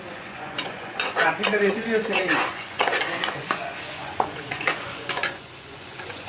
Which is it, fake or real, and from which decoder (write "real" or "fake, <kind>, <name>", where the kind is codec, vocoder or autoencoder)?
fake, vocoder, Vocos